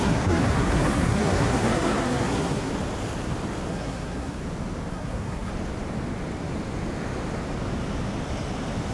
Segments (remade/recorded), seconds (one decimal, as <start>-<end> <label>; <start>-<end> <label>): 0.0-2.7 remade; 2.7-3.7 recorded; 3.7-4.4 remade; 4.4-4.9 recorded; 4.9-5.5 remade; 5.5-8.9 recorded